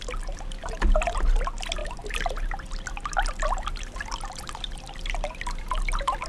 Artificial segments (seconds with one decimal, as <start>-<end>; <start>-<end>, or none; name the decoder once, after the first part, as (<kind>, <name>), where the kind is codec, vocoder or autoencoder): none